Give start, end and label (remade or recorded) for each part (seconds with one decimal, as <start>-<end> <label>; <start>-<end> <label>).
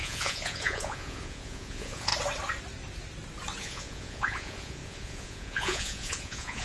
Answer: 0.0-2.1 remade; 2.1-3.6 recorded; 3.6-6.6 remade